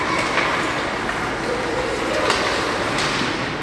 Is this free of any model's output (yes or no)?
yes